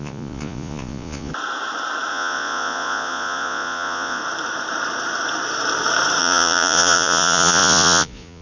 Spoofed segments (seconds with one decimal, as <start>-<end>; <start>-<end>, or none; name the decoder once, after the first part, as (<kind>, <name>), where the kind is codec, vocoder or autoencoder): 0.0-1.3 (vocoder, Vocos); 2.1-4.2; 6.2-8.4